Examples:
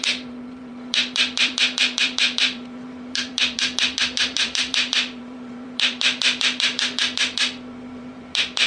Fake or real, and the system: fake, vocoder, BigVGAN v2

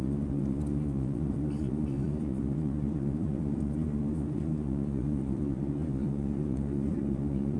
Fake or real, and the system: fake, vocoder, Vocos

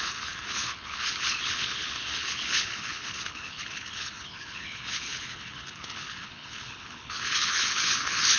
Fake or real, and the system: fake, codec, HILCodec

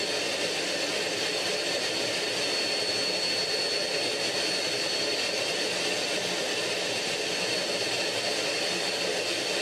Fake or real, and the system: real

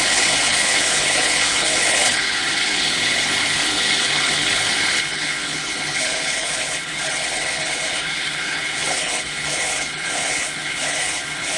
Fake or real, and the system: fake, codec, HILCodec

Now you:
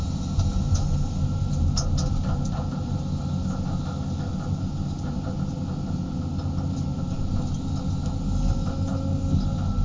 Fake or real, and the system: real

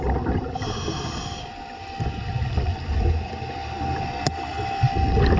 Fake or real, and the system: real